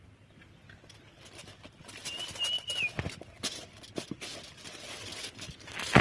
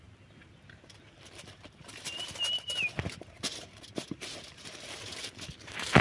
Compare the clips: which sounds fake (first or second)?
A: second